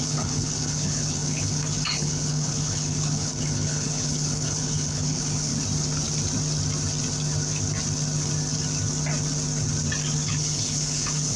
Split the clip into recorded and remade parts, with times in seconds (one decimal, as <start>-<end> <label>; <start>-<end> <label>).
0.0-5.5 remade; 5.5-10.3 recorded; 10.3-11.4 remade